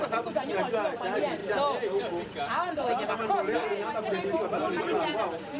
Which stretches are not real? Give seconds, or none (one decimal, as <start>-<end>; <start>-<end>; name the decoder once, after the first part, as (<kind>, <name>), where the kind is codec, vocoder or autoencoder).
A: none